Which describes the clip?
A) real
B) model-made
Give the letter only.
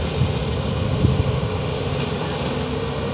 A